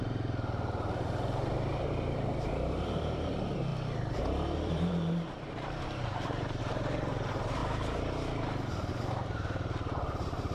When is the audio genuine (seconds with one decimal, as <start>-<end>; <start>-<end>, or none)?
7.6-8.9